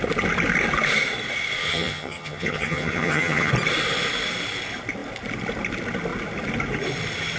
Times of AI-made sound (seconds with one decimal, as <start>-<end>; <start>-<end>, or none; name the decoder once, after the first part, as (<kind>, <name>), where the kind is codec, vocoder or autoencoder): 1.6-3.5 (vocoder, HiFi-GAN)